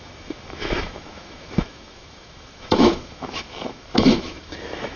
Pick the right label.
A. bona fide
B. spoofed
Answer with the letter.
B